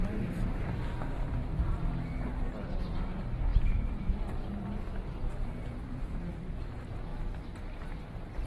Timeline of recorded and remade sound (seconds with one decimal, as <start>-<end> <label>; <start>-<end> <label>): 0.0-7.1 remade; 7.1-8.0 recorded; 8.0-8.5 remade